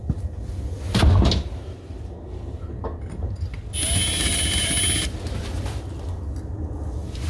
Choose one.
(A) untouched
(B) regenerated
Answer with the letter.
A